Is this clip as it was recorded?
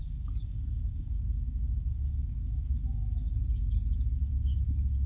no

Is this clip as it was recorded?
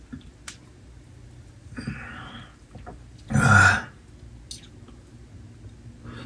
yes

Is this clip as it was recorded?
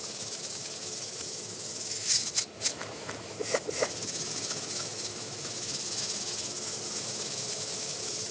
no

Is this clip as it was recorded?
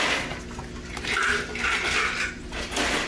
yes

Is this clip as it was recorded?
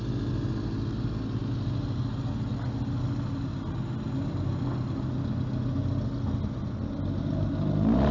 yes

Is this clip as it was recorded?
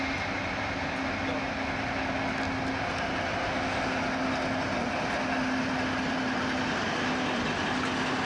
yes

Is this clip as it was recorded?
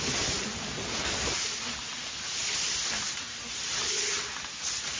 yes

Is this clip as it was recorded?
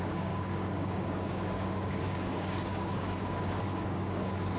no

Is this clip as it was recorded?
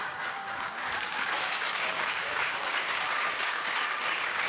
no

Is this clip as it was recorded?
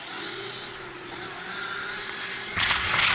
no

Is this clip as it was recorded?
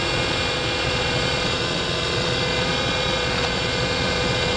no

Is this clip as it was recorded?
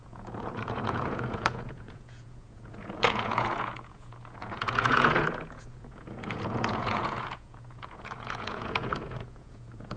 no